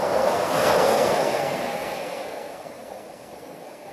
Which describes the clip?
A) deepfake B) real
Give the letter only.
A